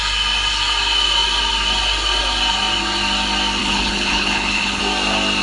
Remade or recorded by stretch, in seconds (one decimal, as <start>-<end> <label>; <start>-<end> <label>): 0.0-3.6 recorded; 3.6-4.8 remade; 4.8-5.4 recorded